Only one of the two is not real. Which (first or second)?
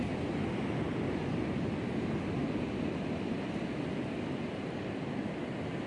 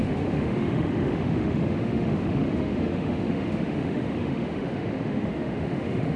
second